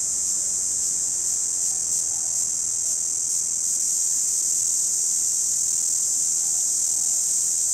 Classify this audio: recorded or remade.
recorded